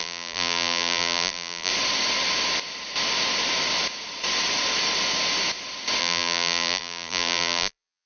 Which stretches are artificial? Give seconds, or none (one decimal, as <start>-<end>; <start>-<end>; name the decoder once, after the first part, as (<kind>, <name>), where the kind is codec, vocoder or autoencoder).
0.0-1.7 (vocoder, BigVGAN v2); 6.0-8.1